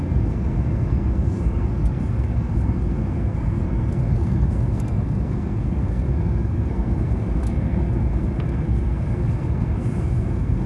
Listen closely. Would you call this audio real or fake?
fake